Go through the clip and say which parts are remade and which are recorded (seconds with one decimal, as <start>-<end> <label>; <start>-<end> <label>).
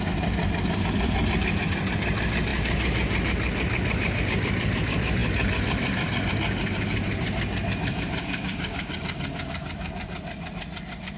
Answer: 0.0-8.2 recorded; 8.2-8.9 remade; 8.9-11.2 recorded